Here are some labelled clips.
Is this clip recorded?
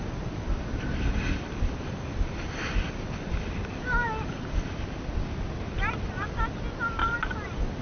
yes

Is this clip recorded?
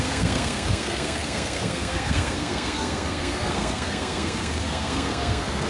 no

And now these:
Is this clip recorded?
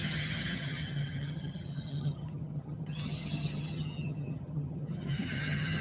no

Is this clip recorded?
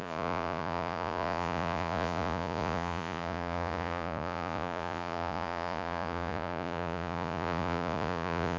no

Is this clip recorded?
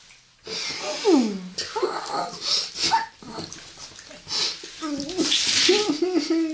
yes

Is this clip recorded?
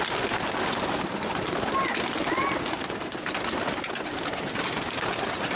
yes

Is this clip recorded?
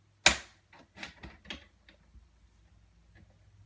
yes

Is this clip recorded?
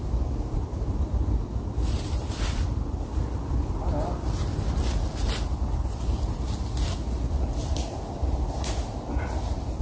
yes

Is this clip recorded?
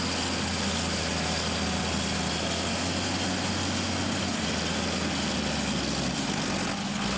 yes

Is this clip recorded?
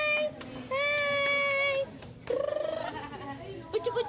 yes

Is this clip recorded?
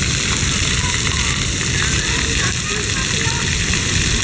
yes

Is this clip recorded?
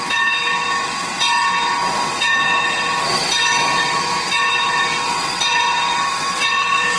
no